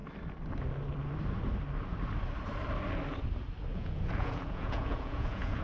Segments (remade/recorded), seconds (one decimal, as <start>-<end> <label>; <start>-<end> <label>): 0.0-3.7 recorded; 3.7-5.6 remade